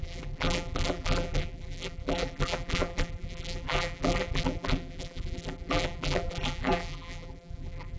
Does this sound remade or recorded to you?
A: remade